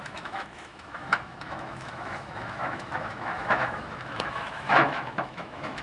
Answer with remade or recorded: remade